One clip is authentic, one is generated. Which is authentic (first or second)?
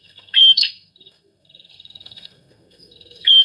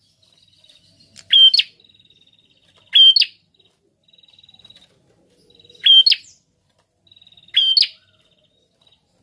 second